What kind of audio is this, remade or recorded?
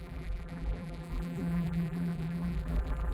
remade